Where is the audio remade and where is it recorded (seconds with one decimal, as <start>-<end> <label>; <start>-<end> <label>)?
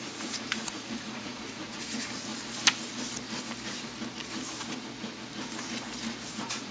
0.0-2.3 remade; 2.3-6.3 recorded; 6.3-6.7 remade